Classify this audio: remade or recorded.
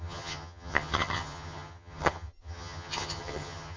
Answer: remade